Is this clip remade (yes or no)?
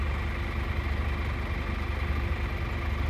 no